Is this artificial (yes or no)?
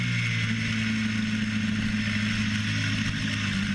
no